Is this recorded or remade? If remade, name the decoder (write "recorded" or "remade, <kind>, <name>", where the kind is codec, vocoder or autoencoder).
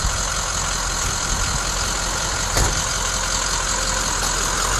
recorded